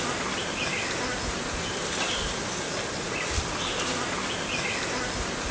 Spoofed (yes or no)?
no